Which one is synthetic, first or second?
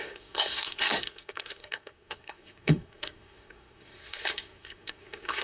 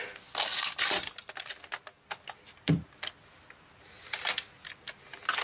first